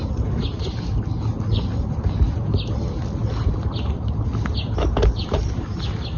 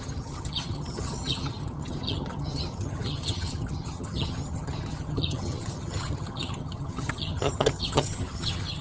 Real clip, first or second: first